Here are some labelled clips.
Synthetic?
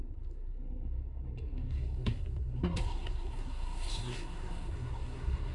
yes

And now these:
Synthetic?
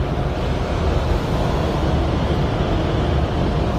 no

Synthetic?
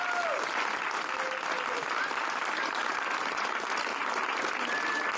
no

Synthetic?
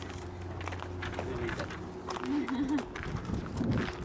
no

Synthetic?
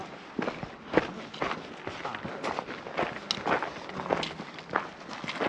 no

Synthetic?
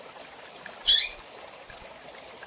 no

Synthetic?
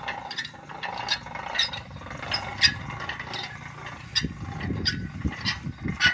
no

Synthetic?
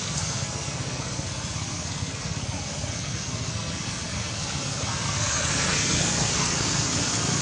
yes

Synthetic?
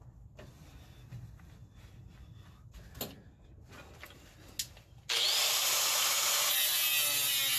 no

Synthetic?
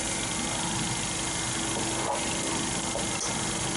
no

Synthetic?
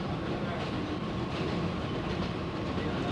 no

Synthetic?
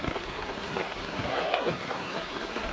yes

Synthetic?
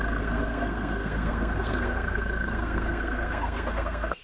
yes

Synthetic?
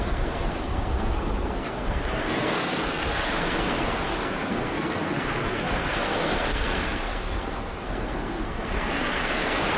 yes